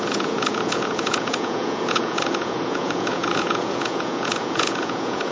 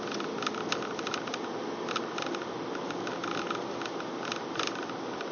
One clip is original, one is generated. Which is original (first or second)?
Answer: second